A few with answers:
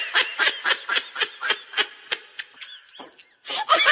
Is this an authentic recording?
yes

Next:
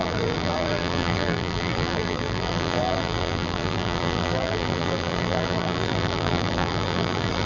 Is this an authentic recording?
no